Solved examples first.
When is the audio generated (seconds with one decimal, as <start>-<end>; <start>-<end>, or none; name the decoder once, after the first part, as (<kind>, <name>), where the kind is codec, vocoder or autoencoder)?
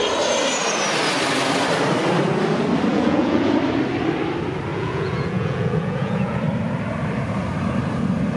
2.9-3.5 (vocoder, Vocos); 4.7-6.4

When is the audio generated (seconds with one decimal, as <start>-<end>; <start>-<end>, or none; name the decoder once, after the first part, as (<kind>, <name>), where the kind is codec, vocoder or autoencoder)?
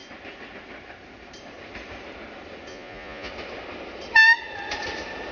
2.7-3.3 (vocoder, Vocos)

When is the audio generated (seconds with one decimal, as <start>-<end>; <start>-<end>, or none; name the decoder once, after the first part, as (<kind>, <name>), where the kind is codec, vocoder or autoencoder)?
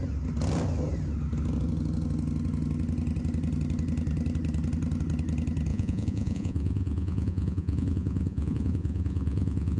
5.7-9.8 (vocoder, Vocos)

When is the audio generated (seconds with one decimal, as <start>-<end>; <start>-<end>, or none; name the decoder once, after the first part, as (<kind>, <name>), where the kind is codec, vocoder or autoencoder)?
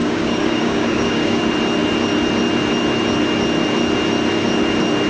0.0-1.4 (codec, DAC)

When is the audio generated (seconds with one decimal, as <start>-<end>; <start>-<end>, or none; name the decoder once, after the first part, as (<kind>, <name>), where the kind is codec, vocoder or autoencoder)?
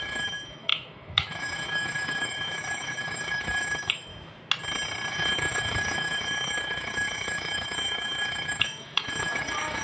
0.0-4.1 (autoencoder, DAC-VAE); 5.1-9.8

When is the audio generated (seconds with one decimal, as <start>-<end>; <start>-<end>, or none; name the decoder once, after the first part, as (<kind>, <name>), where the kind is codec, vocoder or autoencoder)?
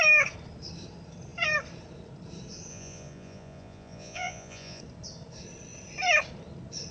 2.7-4.8 (vocoder, Vocos)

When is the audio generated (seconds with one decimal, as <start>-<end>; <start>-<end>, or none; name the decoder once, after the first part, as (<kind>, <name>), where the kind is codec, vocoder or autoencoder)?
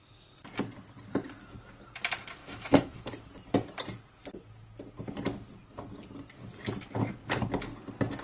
2.4-3.1 (autoencoder, DAC-VAE)